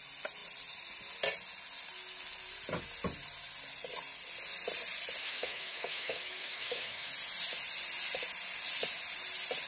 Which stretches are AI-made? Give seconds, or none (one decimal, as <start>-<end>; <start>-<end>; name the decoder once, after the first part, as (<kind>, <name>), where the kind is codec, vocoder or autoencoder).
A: 5.2-7.1 (autoencoder, DAC-VAE)